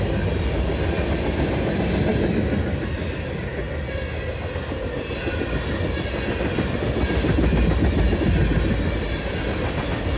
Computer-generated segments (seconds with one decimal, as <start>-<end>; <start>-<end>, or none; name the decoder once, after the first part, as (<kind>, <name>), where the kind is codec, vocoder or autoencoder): none